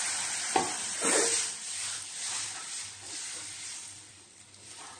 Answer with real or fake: fake